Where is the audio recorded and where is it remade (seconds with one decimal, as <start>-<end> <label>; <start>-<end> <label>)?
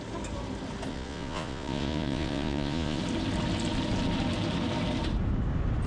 0.0-0.9 recorded; 0.9-3.0 remade; 3.0-5.9 recorded